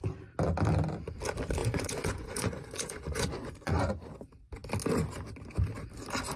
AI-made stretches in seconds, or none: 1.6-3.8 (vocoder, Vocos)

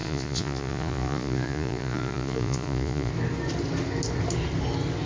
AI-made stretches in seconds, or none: 0.0-3.1 (vocoder, Vocos)

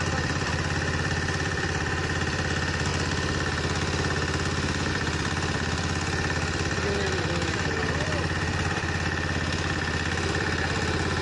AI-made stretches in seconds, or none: 0.0-2.9 (vocoder, BigVGAN v2); 4.9-11.2

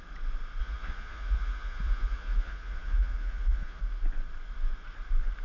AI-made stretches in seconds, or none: 0.6-3.8 (vocoder, Vocos)

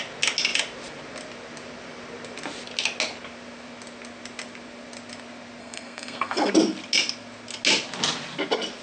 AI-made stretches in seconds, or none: 5.6-6.5 (codec, SNAC)

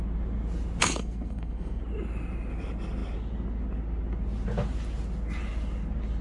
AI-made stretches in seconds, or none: 0.8-1.8 (codec, SNAC)